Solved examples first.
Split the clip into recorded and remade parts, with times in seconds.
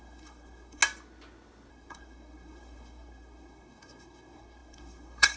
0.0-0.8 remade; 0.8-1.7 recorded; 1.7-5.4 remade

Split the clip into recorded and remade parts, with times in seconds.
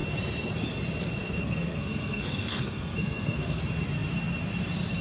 0.0-1.4 recorded; 1.4-3.6 remade; 3.6-5.0 recorded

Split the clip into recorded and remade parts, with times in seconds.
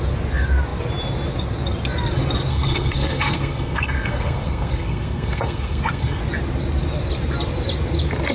0.0-2.5 recorded; 2.5-6.2 remade; 6.2-8.3 recorded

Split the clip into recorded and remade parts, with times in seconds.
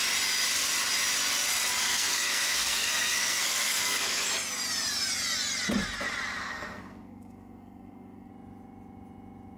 0.0-1.8 recorded; 1.8-4.3 remade; 4.3-6.4 recorded; 6.4-8.3 remade; 8.3-9.6 recorded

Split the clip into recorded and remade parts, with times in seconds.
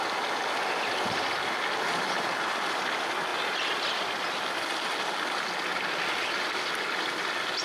0.0-7.6 recorded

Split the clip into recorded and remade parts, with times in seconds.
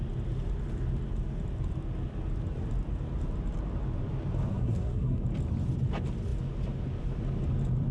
0.0-4.5 recorded; 4.5-5.2 remade; 5.2-7.9 recorded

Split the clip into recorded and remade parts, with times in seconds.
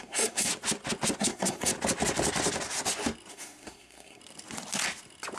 0.0-0.5 remade; 0.5-1.2 recorded; 1.2-1.7 remade; 1.7-3.3 recorded; 3.3-4.2 remade; 4.2-5.4 recorded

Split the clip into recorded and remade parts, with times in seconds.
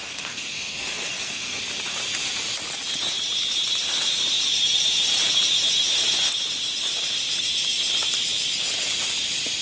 0.0-1.6 remade; 1.6-9.6 recorded